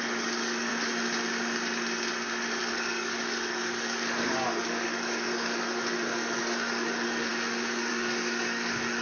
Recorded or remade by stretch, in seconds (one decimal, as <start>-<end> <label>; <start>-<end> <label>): 0.0-0.7 remade; 0.7-2.6 recorded; 2.6-9.0 remade